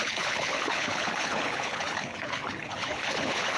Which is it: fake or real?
fake